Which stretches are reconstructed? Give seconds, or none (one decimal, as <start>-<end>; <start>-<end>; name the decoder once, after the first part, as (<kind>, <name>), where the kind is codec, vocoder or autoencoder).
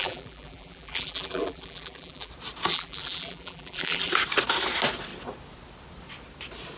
0.0-2.3 (vocoder, BigVGAN v2); 2.7-4.1